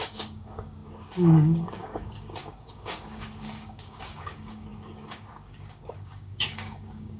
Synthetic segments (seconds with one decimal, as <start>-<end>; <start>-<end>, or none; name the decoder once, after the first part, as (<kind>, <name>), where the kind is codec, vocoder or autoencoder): 0.0-7.2 (codec, DAC)